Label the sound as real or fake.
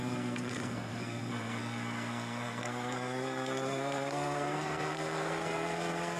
fake